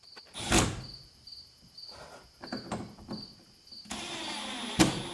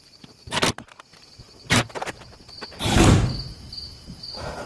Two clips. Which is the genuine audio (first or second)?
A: first